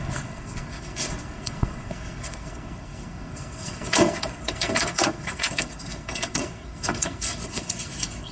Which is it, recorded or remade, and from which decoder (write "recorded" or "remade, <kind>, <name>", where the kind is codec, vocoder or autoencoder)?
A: remade, codec, SNAC